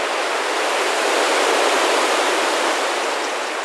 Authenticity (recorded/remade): recorded